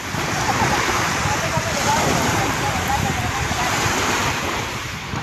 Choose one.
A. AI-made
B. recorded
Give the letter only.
A